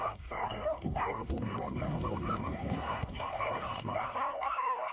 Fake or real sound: fake